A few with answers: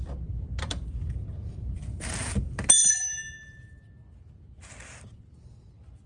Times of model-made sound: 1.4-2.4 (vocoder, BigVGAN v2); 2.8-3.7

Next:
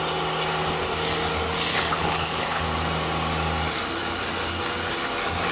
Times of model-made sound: 1.7-2.6 (codec, HILCodec)